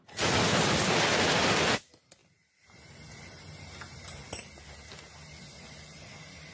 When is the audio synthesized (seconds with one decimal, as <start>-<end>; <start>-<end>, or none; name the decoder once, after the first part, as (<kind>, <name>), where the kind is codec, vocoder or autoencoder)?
none